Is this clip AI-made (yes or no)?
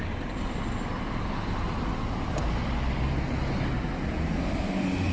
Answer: no